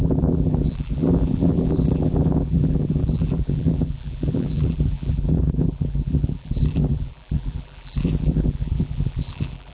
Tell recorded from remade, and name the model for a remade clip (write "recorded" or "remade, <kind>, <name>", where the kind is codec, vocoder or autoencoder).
remade, vocoder, BigVGAN v2